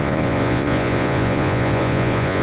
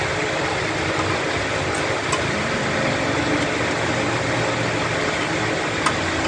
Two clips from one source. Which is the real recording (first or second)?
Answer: second